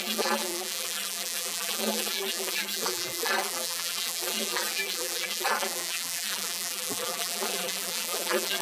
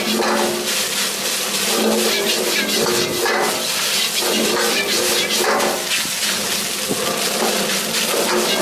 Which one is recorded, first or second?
second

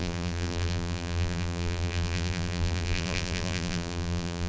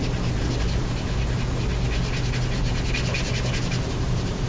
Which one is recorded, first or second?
second